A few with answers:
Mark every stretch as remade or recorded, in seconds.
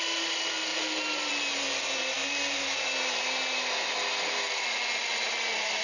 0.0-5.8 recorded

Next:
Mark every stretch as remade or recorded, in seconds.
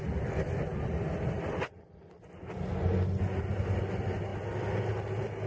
0.0-5.5 recorded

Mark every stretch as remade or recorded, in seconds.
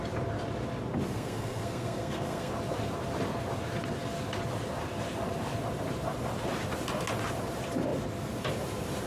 0.0-1.1 recorded; 1.1-2.5 remade; 2.5-9.1 recorded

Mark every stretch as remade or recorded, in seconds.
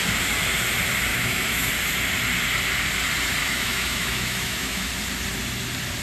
0.0-1.1 recorded; 1.1-1.7 remade; 1.7-3.4 recorded; 3.4-4.9 remade; 4.9-6.0 recorded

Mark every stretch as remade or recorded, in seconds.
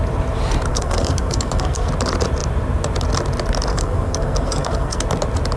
0.0-0.7 recorded; 0.7-1.9 remade; 1.9-3.7 recorded; 3.7-5.0 remade; 5.0-5.6 recorded